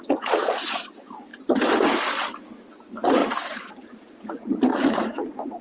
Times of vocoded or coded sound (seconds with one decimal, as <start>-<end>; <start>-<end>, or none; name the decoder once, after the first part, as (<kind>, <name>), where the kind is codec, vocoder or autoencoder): 0.0-1.3 (vocoder, Vocos); 2.8-5.6

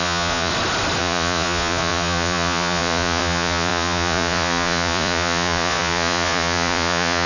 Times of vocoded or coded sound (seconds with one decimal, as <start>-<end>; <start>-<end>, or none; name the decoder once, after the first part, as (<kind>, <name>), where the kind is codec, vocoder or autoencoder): 0.0-0.5 (vocoder, Vocos); 1.0-7.3

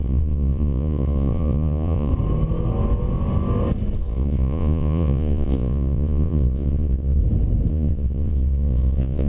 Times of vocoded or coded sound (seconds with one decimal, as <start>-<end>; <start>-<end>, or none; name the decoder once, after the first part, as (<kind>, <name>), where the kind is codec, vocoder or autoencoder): 0.0-2.1 (vocoder, Vocos); 4.0-7.2; 7.7-9.3